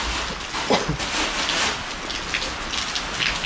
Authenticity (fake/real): real